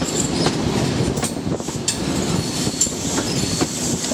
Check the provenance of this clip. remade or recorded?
recorded